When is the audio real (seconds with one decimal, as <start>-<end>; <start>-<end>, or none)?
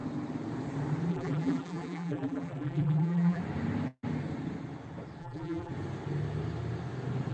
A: 0.0-1.1; 3.4-5.2; 5.7-7.3